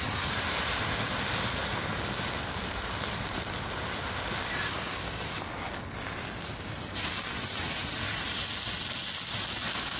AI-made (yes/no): no